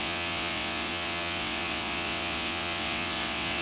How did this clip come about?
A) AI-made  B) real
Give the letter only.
A